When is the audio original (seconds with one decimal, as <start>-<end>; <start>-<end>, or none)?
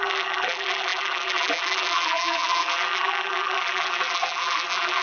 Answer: none